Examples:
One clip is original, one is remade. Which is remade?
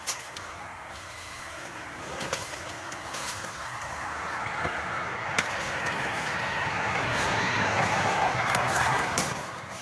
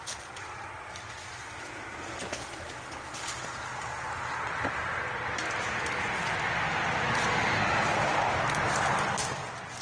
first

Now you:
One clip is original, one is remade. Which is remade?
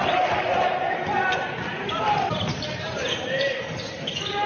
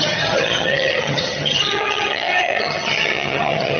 second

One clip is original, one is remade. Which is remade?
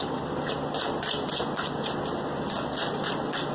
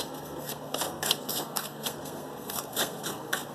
second